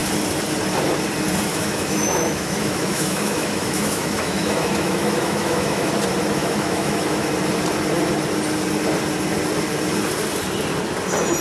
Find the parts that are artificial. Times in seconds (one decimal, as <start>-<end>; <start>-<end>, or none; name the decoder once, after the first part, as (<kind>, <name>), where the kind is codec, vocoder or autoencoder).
1.5-5.9 (autoencoder, DAC-VAE); 6.4-7.3